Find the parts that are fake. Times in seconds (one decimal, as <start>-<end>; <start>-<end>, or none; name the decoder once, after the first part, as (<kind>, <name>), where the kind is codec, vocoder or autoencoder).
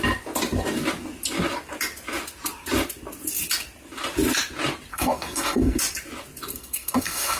4.9-5.8 (codec, SNAC); 6.5-7.4